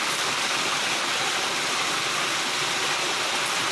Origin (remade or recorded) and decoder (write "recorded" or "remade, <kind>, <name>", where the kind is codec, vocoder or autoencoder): recorded